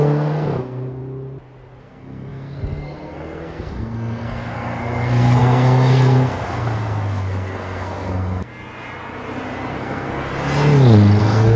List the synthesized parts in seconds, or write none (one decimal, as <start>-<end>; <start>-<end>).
0.0-1.0; 1.8-8.5; 9.7-10.3; 11.2-11.6